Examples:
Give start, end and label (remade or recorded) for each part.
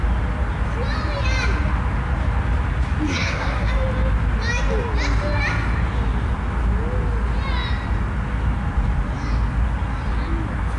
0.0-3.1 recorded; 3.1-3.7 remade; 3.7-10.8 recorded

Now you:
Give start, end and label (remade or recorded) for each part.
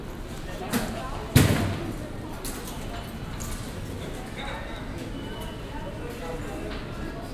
0.0-7.3 recorded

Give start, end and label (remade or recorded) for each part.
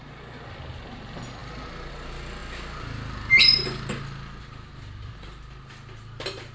0.0-6.5 recorded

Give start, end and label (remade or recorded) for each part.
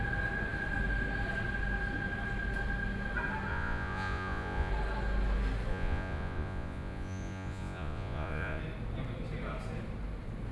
0.0-3.5 recorded; 3.5-4.7 remade; 4.7-5.7 recorded; 5.7-8.6 remade; 8.6-10.5 recorded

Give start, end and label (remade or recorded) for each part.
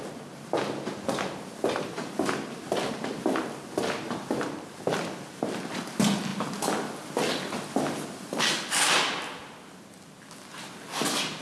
0.0-11.4 recorded